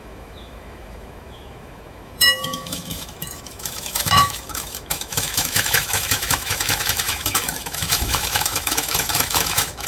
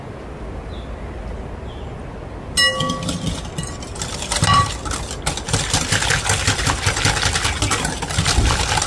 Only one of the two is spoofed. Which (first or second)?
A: first